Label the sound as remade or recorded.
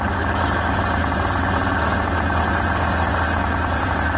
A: recorded